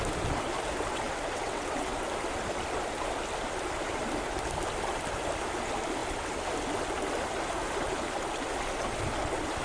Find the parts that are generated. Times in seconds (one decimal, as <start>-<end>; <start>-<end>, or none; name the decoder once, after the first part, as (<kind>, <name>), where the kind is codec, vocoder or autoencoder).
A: 0.9-1.9 (vocoder, WaveNeXt)